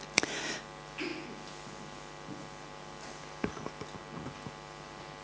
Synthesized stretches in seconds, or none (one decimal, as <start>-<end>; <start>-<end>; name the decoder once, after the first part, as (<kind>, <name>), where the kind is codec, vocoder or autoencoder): none

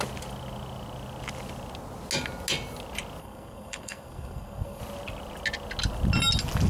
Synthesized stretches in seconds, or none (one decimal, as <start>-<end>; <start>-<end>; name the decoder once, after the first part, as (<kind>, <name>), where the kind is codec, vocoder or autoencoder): 3.2-4.8 (codec, SNAC)

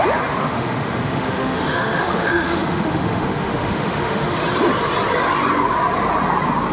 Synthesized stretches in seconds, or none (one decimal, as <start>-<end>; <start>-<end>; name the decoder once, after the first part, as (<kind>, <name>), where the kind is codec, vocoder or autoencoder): 0.4-4.4 (autoencoder, DAC-VAE)